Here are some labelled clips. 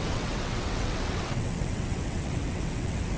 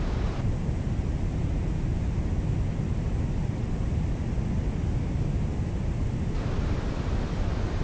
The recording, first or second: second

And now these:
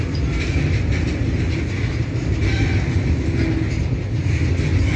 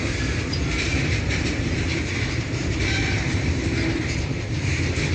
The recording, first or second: first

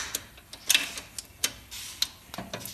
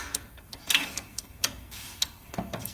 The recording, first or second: first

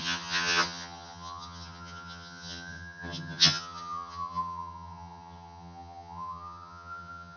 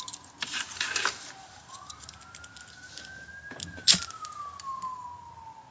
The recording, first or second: second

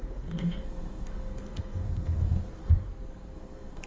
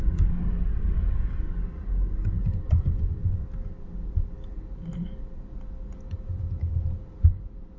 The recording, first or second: second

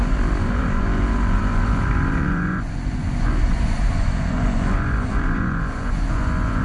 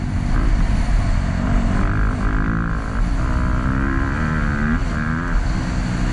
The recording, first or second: second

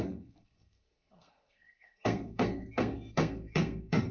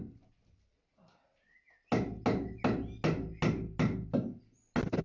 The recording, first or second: second